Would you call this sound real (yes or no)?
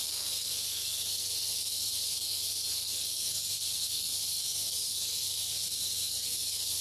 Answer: no